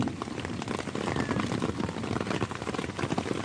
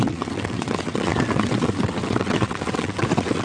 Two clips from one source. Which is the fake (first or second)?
second